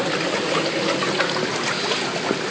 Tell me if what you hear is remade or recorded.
recorded